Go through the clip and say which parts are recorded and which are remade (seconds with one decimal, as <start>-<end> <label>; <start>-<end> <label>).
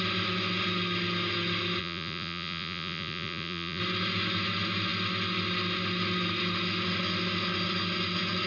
0.0-1.8 recorded; 1.8-3.8 remade; 3.8-8.5 recorded